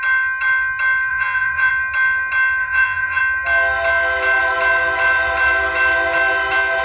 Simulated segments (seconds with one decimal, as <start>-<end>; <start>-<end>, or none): 1.1-1.7; 2.6-3.2